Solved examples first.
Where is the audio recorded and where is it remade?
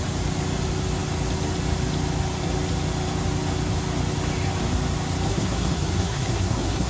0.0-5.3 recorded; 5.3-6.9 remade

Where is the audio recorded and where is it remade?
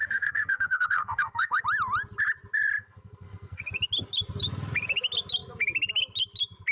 0.0-1.6 remade; 1.6-2.8 recorded; 2.8-3.6 remade; 3.6-6.7 recorded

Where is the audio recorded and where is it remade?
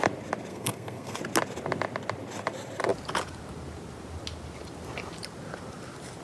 0.0-0.5 recorded; 0.5-1.2 remade; 1.2-6.2 recorded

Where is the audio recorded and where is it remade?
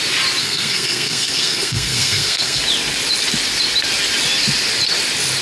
0.0-0.4 recorded; 0.4-2.6 remade; 2.6-5.4 recorded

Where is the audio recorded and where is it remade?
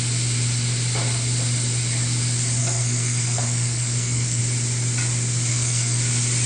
0.0-2.6 recorded; 2.6-4.4 remade; 4.4-5.5 recorded; 5.5-6.0 remade; 6.0-6.5 recorded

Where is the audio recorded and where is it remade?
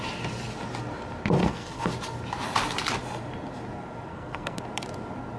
0.0-1.4 recorded; 1.4-1.9 remade; 1.9-4.1 recorded; 4.1-4.6 remade; 4.6-5.4 recorded